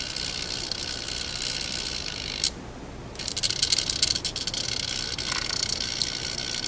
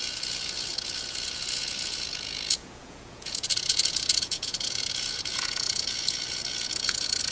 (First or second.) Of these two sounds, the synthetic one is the second